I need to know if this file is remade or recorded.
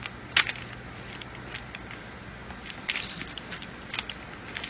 recorded